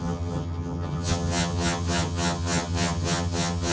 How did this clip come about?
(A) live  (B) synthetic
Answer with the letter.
B